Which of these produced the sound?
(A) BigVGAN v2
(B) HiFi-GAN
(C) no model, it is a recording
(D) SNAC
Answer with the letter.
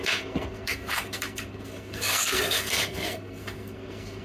D